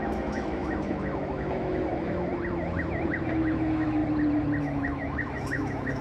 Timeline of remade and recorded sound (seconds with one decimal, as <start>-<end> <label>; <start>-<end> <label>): 0.0-2.3 remade; 2.3-3.2 recorded; 3.2-4.0 remade; 4.0-4.6 recorded; 4.6-6.0 remade